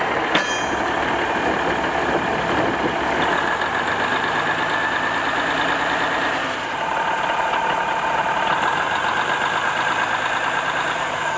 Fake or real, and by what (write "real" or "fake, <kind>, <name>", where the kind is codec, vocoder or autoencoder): real